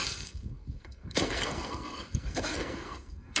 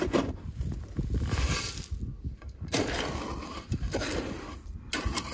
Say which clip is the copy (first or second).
first